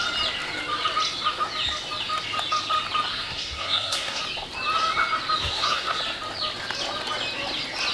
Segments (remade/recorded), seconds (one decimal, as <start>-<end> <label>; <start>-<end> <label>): 0.0-3.1 recorded; 3.1-4.2 remade; 4.2-5.4 recorded; 5.4-6.0 remade; 6.0-7.9 recorded